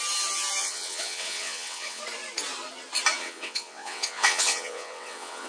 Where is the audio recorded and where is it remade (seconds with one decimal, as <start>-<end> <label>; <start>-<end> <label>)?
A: 0.0-0.6 recorded; 0.6-2.0 remade; 2.0-3.2 recorded; 3.2-5.5 remade